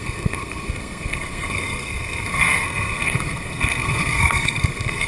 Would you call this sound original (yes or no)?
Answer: no